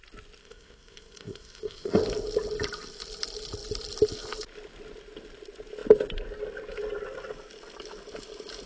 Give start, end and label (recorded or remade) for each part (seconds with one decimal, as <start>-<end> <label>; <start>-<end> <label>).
0.0-0.4 recorded; 0.4-1.9 remade; 1.9-8.7 recorded